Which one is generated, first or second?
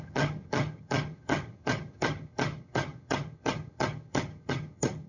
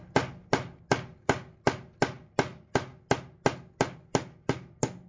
first